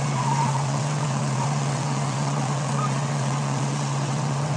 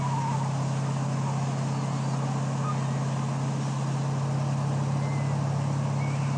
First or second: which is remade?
first